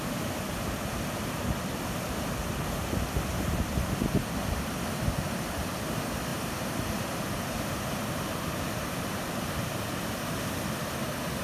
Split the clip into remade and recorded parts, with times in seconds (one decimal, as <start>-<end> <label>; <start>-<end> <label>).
0.0-11.4 remade